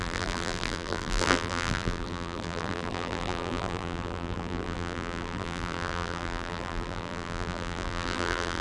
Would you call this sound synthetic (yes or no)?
yes